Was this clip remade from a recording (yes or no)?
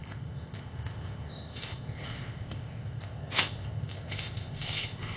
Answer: yes